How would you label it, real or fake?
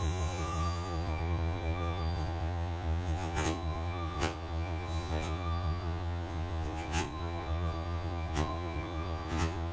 fake